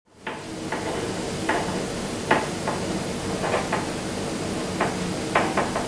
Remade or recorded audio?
recorded